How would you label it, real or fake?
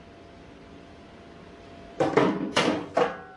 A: real